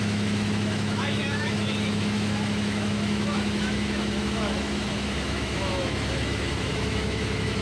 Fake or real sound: fake